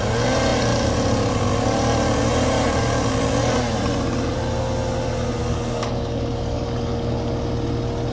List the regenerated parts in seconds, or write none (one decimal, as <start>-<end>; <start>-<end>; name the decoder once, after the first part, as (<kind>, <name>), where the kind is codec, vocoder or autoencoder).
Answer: 5.4-7.3 (codec, DAC)

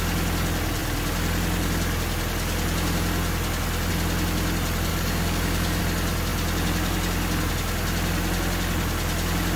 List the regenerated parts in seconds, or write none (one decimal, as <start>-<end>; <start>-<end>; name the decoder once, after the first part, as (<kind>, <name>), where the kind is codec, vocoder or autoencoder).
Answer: 4.9-5.8 (codec, DAC)

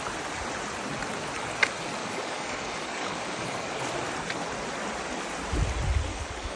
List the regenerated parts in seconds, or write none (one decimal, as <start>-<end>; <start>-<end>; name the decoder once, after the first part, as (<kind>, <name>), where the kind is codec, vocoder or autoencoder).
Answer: 2.0-3.9 (codec, DAC); 6.1-6.6

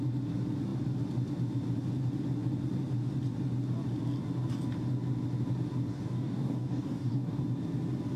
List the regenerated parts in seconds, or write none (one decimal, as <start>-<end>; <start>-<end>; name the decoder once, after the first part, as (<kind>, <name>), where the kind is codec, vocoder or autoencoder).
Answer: 5.9-7.4 (codec, DAC)

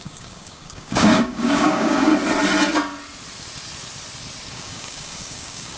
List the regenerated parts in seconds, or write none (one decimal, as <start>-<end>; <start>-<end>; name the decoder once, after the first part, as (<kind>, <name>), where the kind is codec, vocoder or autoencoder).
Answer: 0.0-2.1 (codec, DAC); 4.5-5.8

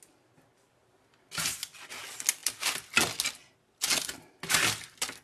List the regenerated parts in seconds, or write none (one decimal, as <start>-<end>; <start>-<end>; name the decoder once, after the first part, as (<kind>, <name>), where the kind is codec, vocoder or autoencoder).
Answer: none